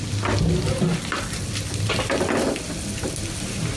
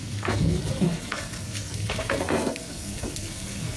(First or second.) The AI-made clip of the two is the second